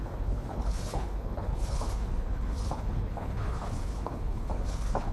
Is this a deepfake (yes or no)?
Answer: yes